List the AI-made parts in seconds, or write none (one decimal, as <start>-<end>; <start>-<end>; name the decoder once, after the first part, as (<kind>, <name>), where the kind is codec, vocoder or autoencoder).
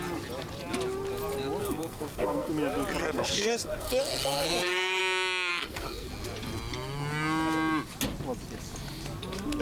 1.6-2.5 (codec, SNAC); 3.0-5.0; 5.5-6.1